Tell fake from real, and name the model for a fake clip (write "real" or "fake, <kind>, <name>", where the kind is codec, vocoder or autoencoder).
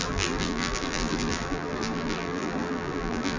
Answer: fake, vocoder, BigVGAN v2